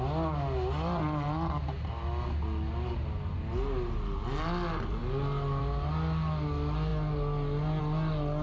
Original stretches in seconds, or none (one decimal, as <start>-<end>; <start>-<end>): 0.0-8.4